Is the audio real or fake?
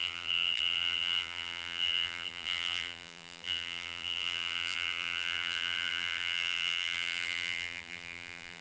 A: fake